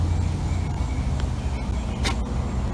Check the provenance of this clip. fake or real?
real